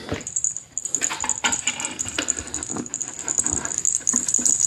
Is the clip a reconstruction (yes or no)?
no